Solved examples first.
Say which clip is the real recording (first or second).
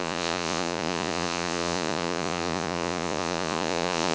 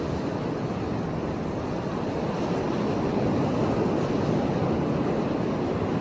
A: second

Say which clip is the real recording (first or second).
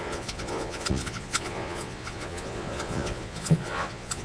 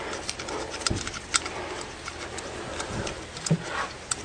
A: second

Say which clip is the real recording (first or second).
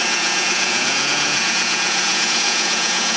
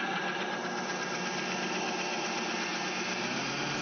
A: second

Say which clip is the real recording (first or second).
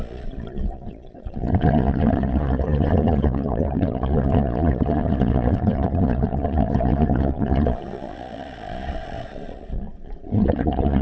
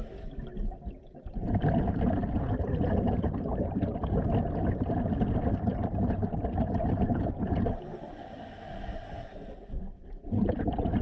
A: second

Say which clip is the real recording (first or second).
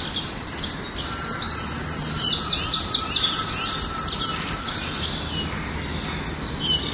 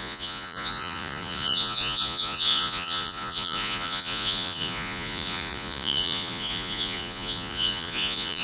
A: first